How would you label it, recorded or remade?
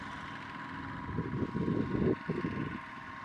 recorded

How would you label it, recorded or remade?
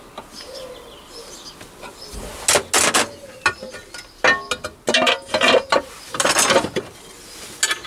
recorded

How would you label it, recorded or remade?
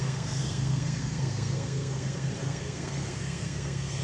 remade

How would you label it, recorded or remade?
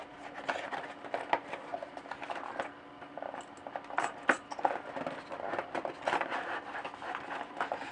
recorded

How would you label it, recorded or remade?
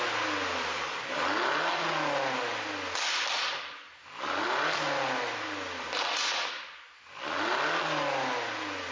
recorded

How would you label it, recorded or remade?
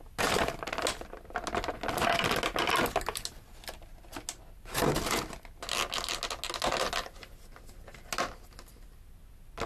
recorded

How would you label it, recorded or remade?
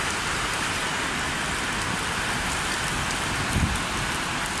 recorded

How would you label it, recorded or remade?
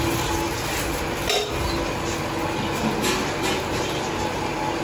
recorded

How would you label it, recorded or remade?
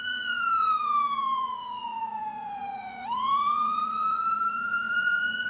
remade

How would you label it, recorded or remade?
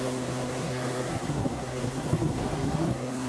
remade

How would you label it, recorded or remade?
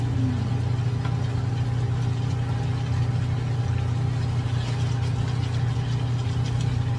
recorded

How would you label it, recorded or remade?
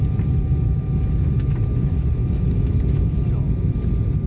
recorded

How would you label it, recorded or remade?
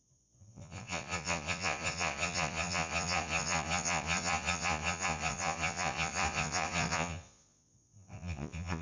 remade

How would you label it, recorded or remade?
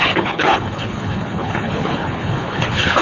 remade